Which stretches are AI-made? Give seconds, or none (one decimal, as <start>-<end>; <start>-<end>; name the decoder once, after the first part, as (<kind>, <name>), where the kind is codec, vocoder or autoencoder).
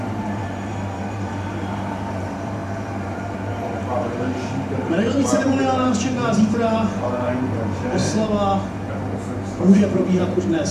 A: 0.0-8.0 (vocoder, BigVGAN v2); 9.6-10.7